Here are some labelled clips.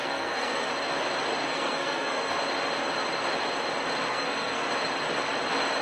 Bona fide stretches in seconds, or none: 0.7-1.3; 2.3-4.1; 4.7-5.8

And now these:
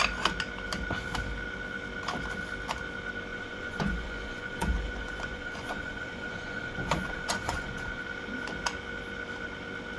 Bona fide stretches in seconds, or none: 0.0-3.3; 8.0-10.0

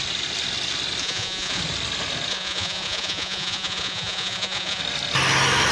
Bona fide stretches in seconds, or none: 0.0-1.0; 1.6-2.3; 4.8-5.7

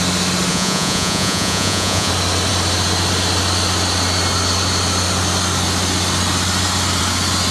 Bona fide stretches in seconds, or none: 0.0-0.5; 2.1-7.5

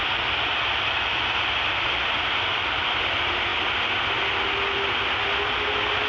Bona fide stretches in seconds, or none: 0.0-6.1

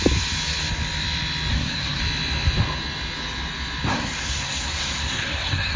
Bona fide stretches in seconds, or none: 0.0-1.5; 2.0-3.9

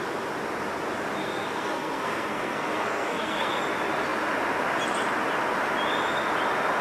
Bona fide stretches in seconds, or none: 0.0-1.2; 3.6-6.8

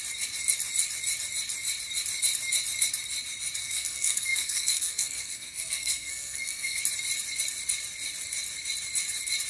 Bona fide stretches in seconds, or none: 0.0-3.6; 6.8-9.5